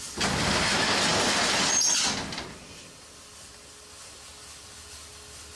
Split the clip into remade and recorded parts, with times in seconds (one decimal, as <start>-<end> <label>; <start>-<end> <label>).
0.0-5.6 recorded